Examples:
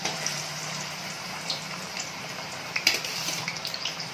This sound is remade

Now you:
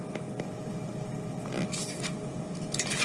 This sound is recorded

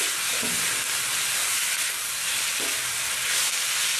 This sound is recorded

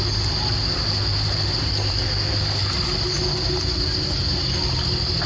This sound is recorded